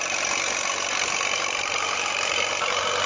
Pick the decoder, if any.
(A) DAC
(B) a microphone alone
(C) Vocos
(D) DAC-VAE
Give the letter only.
B